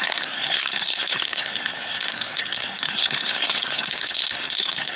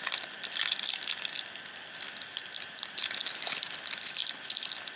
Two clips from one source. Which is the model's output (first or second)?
first